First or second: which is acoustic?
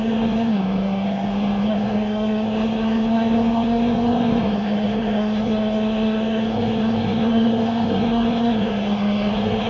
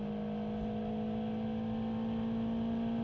second